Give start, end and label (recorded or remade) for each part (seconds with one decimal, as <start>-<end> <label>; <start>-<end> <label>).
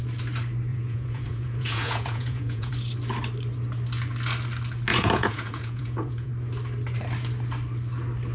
0.0-0.7 recorded; 0.7-2.7 remade; 2.7-4.9 recorded; 4.9-6.3 remade; 6.3-8.3 recorded